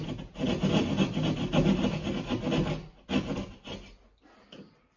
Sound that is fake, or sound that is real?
real